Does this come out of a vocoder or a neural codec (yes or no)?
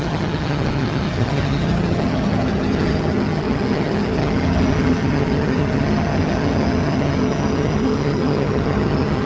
yes